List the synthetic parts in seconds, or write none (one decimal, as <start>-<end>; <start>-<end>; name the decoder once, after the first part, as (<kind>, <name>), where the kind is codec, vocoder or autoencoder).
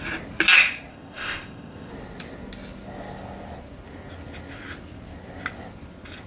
0.9-1.9 (codec, ZipCodec)